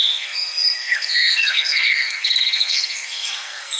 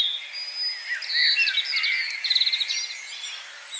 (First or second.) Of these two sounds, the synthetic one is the first